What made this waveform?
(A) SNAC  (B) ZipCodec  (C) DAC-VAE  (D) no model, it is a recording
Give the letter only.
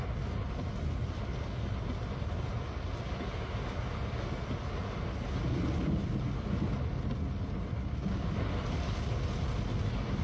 D